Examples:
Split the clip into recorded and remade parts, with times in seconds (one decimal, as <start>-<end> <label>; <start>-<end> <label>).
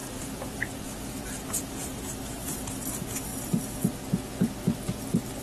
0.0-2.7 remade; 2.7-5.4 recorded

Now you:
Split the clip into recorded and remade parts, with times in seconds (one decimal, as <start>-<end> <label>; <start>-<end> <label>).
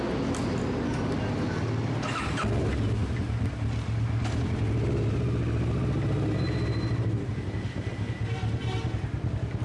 0.0-9.6 recorded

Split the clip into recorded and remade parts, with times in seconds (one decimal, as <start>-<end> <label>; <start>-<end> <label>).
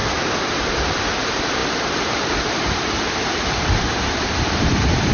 0.0-1.6 recorded; 1.6-5.1 remade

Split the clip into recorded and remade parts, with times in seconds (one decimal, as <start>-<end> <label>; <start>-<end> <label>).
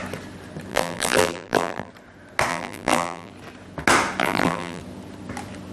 0.0-0.7 recorded; 0.7-1.9 remade; 1.9-2.5 recorded; 2.5-3.3 remade; 3.3-4.2 recorded; 4.2-4.8 remade; 4.8-5.7 recorded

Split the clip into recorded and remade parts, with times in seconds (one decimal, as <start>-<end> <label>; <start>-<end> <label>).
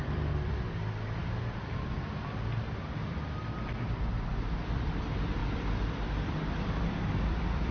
0.0-7.7 remade